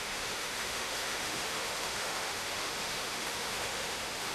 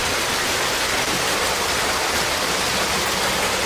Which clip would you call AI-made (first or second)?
first